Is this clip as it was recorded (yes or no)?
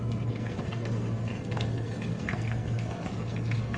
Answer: no